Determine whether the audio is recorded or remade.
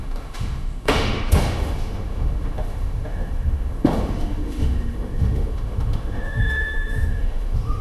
remade